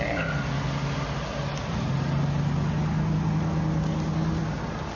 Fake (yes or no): no